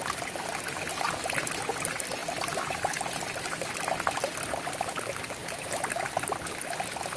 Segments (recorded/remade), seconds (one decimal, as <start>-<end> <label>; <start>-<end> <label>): 0.0-5.4 recorded; 5.4-5.9 remade; 5.9-7.2 recorded